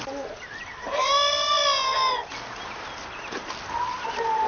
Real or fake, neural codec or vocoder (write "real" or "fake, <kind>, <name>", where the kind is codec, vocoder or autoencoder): real